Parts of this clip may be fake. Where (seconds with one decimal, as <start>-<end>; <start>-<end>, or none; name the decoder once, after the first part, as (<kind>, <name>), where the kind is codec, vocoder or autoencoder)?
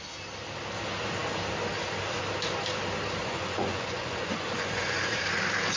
3.2-5.2 (vocoder, Vocos)